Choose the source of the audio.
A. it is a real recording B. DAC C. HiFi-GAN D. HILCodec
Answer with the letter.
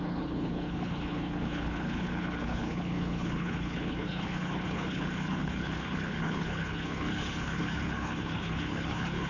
D